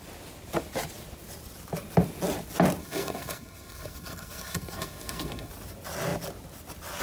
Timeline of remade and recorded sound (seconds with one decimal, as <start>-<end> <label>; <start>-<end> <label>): 0.0-2.8 recorded; 2.8-5.5 remade; 5.5-7.0 recorded

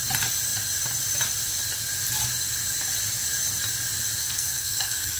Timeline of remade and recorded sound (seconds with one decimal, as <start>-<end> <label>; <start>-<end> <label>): 0.0-4.2 recorded; 4.2-5.2 remade

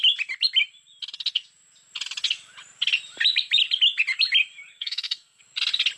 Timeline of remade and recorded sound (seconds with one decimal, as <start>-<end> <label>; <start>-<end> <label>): 0.0-4.7 recorded; 4.7-5.4 remade; 5.4-6.0 recorded

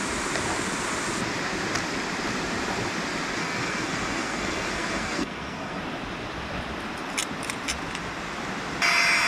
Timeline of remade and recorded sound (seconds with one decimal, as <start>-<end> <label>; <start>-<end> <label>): 0.0-3.4 recorded; 3.4-5.8 remade; 5.8-9.3 recorded

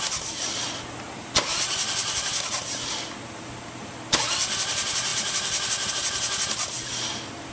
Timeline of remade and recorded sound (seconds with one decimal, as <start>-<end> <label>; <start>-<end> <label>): 0.0-7.5 recorded

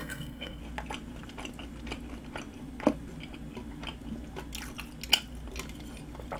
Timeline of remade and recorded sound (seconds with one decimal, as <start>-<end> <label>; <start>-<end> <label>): 0.0-0.6 remade; 0.6-6.4 recorded

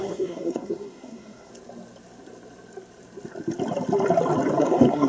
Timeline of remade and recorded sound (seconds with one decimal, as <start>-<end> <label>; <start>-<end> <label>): 0.0-1.5 remade; 1.5-4.6 recorded; 4.6-5.1 remade